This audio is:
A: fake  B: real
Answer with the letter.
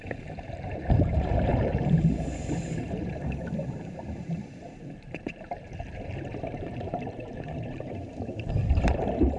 A